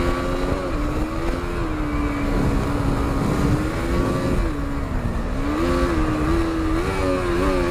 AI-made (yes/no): no